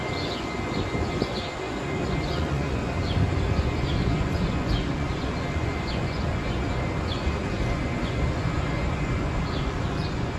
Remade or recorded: remade